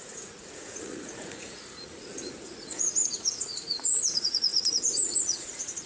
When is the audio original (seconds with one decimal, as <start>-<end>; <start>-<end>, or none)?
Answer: none